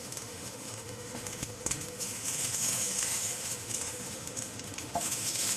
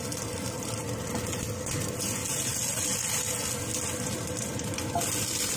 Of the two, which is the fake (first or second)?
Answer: first